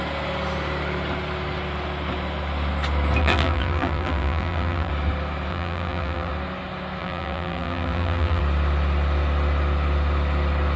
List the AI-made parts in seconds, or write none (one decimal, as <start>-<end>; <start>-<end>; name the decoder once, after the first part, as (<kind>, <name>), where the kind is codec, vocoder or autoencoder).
3.2-4.9 (vocoder, BigVGAN v2); 5.5-6.3; 7.0-8.4